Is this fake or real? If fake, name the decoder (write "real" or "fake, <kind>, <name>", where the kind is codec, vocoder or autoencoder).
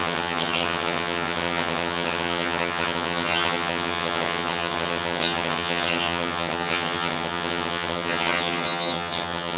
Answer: fake, vocoder, HiFi-GAN